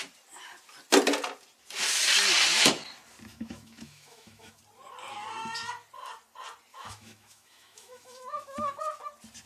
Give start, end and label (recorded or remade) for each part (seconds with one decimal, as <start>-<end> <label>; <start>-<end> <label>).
0.0-3.3 recorded; 3.3-4.6 remade; 4.6-6.7 recorded; 6.7-8.8 remade; 8.8-9.5 recorded